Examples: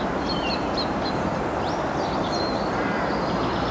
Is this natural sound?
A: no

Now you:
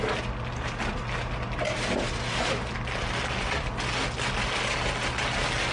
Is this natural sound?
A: yes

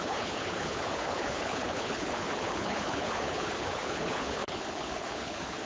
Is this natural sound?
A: no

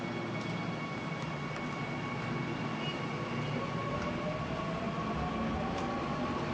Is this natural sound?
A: yes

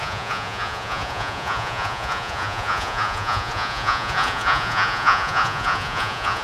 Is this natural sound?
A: no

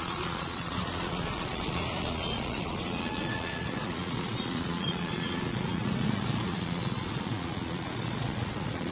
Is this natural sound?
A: no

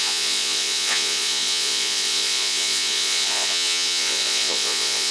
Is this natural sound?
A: no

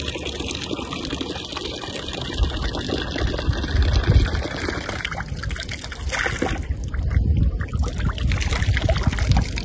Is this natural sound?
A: yes